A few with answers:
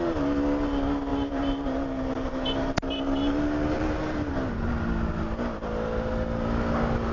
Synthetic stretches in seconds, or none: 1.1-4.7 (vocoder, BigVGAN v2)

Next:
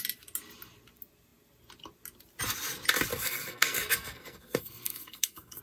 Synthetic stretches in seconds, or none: 3.1-5.6 (codec, SNAC)

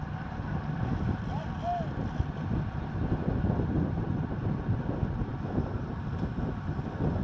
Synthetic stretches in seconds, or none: none

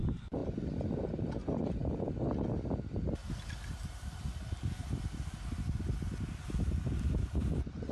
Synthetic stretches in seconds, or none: 0.4-1.3 (vocoder, BigVGAN v2)

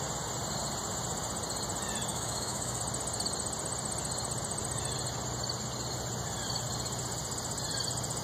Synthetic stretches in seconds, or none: 2.1-2.8 (autoencoder, DAC-VAE)

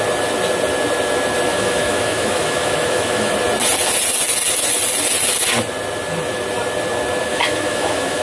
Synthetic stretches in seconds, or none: 1.5-3.3 (autoencoder, DAC-VAE); 7.3-8.2